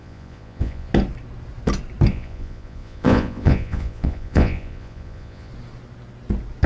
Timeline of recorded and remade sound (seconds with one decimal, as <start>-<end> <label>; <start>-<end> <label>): 0.0-0.9 remade; 0.9-2.1 recorded; 2.1-5.5 remade; 5.5-6.7 recorded